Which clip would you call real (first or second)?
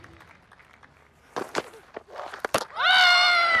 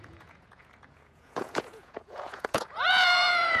first